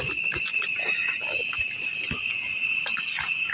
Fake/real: real